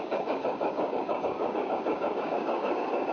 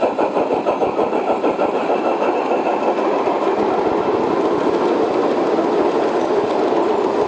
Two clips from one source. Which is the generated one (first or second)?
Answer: first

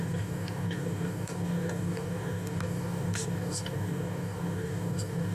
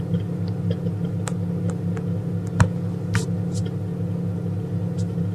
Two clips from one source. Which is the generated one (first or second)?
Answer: first